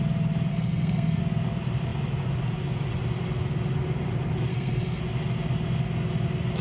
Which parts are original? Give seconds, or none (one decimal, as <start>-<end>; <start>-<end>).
0.0-0.5; 1.2-4.5; 5.0-6.6

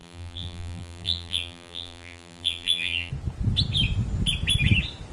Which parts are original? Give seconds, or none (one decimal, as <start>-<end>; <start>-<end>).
3.1-5.1